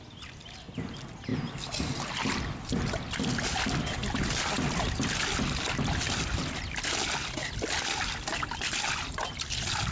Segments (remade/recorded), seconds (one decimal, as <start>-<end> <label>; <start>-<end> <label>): 0.0-9.9 recorded